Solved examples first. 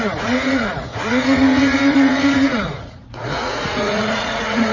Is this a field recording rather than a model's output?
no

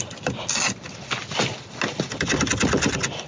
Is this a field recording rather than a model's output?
yes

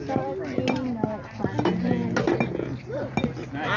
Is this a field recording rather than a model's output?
yes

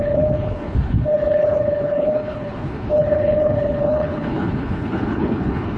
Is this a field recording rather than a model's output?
no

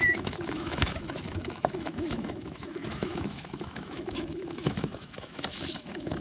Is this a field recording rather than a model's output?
no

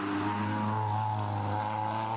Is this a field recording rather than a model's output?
yes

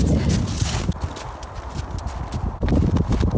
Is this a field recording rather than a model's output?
yes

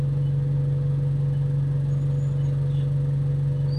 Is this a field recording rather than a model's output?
yes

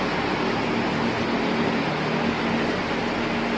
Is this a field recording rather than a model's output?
yes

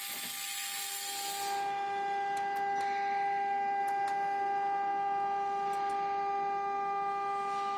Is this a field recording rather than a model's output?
yes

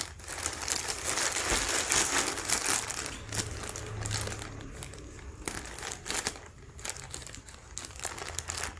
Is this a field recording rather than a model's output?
yes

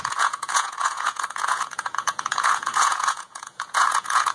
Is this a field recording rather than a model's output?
no